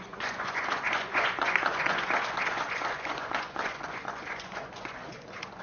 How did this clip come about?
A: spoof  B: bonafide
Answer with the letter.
A